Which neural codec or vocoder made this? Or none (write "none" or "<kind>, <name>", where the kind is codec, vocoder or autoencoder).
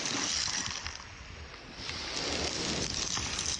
none